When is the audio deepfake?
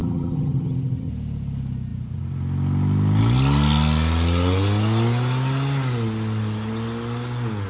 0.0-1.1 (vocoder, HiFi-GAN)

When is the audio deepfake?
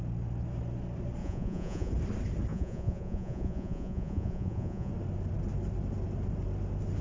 1.2-1.9 (vocoder, Vocos); 2.5-4.9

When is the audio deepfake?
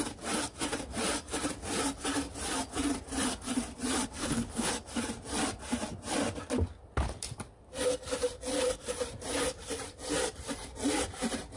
4.2-4.7 (codec, HILCodec)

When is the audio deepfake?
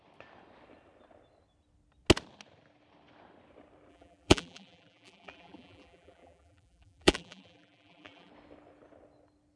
3.9-8.3 (vocoder, BigVGAN v2)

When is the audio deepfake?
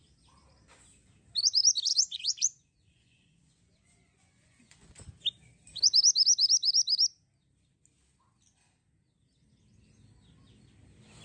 1.9-5.1 (vocoder, Vocos)